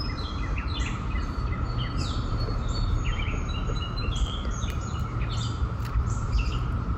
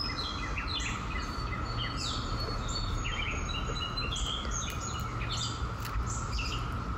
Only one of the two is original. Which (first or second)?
second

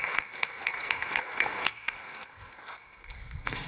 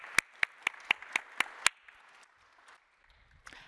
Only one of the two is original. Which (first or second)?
second